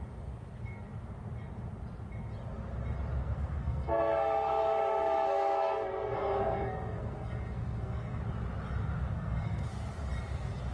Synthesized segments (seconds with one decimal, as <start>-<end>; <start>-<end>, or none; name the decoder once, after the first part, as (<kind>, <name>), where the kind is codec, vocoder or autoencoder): 3.2-8.2 (codec, SNAC); 9.0-9.7